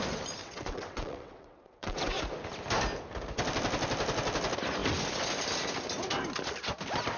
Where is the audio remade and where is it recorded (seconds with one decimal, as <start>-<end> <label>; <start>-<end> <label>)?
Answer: 0.0-0.4 recorded; 0.4-2.2 remade; 2.2-7.2 recorded